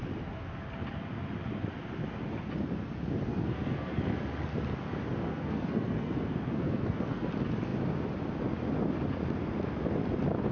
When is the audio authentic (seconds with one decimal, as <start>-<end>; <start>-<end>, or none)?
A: 0.0-3.3; 4.0-5.3; 7.3-10.5